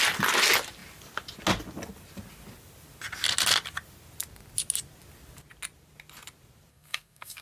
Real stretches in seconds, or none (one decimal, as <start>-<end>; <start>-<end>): 0.0-6.7